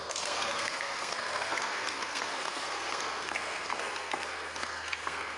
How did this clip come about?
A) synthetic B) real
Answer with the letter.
A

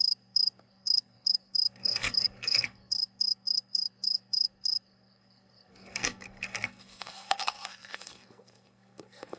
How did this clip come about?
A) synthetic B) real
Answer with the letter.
A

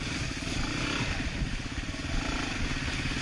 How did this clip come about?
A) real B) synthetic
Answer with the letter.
A